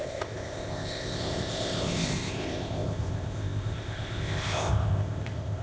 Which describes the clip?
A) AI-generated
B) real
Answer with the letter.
A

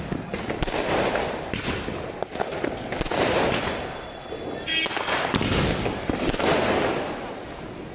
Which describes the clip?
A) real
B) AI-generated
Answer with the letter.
A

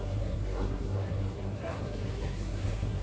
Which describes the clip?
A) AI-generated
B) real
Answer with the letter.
A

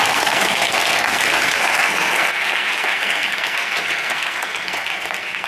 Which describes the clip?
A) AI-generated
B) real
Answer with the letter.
A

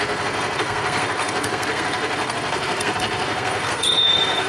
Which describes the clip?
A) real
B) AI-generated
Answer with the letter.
B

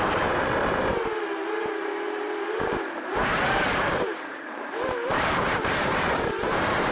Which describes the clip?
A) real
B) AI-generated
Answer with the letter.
B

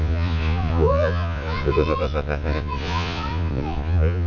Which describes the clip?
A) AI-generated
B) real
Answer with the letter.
A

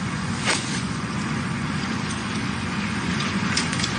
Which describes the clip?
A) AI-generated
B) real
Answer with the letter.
A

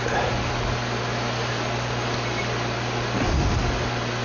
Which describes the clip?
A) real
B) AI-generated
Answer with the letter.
A